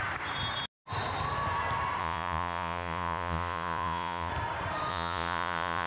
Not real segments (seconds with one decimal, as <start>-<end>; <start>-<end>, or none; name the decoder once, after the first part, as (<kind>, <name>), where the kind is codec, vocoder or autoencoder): 2.0-4.3 (vocoder, Vocos); 4.9-5.9